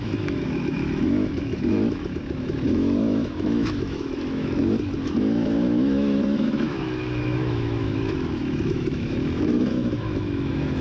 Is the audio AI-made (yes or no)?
yes